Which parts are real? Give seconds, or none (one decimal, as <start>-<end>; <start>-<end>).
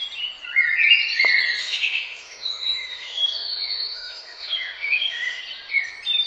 0.0-1.6; 5.4-6.3